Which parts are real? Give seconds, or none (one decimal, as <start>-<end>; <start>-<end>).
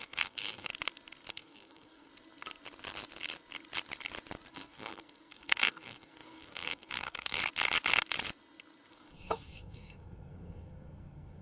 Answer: 0.7-1.3; 2.1-4.5; 7.4-8.9